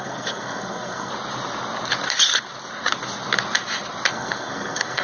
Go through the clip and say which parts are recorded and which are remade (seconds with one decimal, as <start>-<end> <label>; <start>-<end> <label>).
0.0-1.1 remade; 1.1-4.1 recorded; 4.1-5.0 remade